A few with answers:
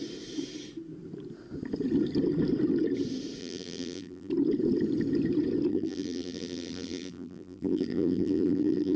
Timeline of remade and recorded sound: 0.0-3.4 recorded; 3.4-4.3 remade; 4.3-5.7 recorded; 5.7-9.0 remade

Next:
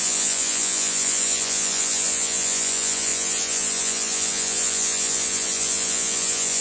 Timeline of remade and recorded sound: 0.0-6.6 remade

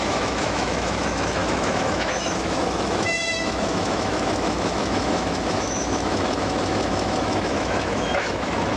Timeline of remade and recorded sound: 0.0-8.8 remade